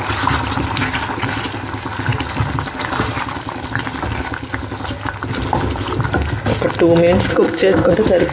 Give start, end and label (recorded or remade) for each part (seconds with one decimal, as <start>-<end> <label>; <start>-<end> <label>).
0.0-7.3 recorded; 7.3-7.9 remade; 7.9-8.3 recorded